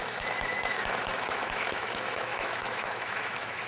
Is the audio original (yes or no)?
no